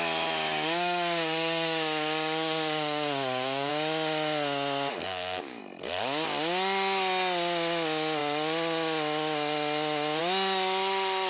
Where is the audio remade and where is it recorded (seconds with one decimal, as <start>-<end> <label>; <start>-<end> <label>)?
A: 0.0-0.5 recorded; 0.5-3.7 remade; 3.7-5.0 recorded; 5.0-5.6 remade; 5.6-11.3 recorded